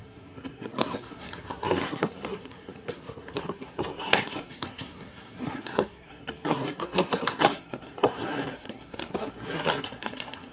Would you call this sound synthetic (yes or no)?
yes